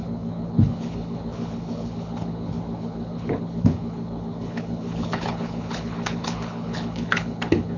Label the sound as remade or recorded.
remade